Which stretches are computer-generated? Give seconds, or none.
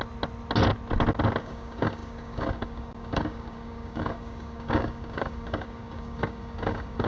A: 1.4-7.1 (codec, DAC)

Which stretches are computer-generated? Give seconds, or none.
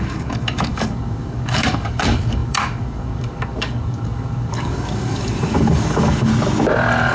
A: 0.0-6.3 (codec, DAC)